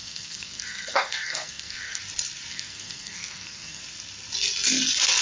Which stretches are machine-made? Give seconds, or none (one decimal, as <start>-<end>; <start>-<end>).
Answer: 0.0-2.0; 2.5-3.8